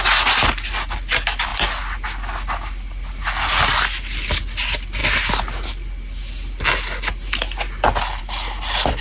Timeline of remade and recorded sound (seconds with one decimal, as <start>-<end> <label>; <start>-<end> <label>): 0.0-9.0 recorded